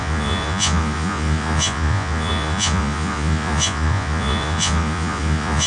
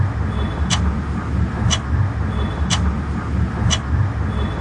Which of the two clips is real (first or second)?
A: second